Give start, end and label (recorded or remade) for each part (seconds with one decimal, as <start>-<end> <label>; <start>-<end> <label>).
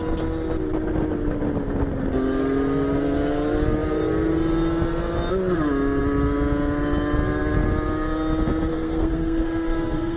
0.0-8.7 recorded; 8.7-10.2 remade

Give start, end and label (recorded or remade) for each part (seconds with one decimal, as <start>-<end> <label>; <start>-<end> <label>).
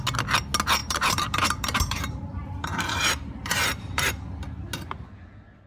0.0-0.8 recorded; 0.8-4.2 remade; 4.2-5.7 recorded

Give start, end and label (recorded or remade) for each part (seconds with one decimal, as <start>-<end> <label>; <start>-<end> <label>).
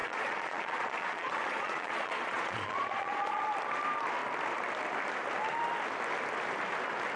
0.0-3.4 remade; 3.4-7.2 recorded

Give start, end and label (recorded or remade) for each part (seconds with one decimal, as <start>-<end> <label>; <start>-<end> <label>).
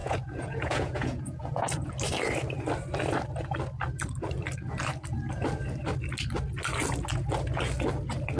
0.0-1.9 remade; 1.9-8.4 recorded